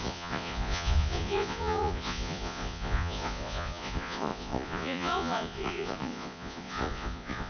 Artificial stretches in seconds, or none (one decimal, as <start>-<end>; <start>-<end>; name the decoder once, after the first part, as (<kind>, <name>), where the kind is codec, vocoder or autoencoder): 0.0-7.5 (vocoder, Vocos)